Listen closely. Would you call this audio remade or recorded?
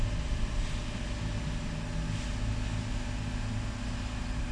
recorded